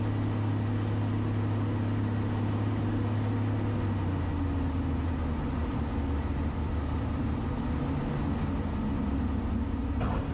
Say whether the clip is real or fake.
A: real